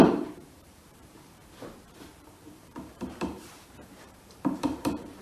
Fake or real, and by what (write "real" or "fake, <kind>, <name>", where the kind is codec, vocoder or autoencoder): fake, vocoder, BigVGAN v2